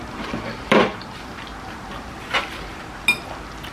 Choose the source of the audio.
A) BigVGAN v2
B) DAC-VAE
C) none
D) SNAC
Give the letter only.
C